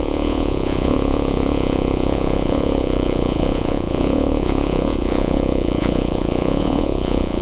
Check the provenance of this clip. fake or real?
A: fake